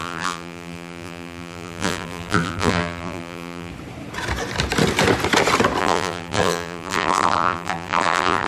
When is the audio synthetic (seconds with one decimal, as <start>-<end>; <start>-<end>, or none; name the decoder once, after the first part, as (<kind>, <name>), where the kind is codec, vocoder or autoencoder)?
0.0-3.7 (vocoder, BigVGAN v2); 5.8-8.5